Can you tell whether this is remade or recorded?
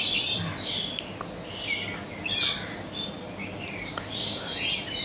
recorded